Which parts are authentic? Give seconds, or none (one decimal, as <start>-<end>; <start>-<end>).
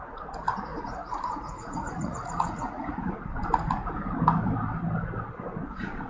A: 0.0-0.7; 3.1-6.1